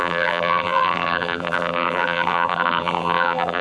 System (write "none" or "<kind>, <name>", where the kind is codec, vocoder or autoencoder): vocoder, BigVGAN v2